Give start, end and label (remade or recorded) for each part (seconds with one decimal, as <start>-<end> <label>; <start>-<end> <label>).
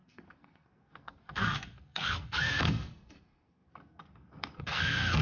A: 0.0-5.2 remade